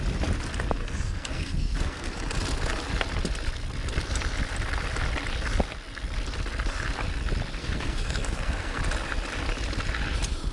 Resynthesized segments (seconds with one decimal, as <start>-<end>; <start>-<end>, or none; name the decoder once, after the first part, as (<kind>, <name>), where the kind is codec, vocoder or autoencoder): 0.8-2.2 (codec, SNAC); 7.6-8.8